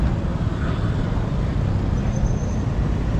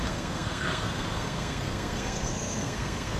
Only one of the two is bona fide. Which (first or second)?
first